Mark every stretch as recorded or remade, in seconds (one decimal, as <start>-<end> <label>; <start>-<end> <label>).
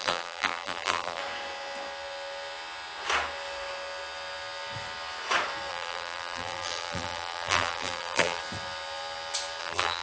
0.0-1.2 remade; 1.2-5.7 recorded; 5.7-8.4 remade; 8.4-9.6 recorded; 9.6-10.0 remade